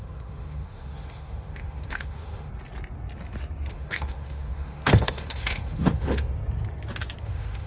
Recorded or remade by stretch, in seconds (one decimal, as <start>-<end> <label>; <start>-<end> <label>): 0.0-2.5 remade; 2.5-3.7 recorded; 3.7-6.3 remade; 6.3-7.2 recorded; 7.2-7.7 remade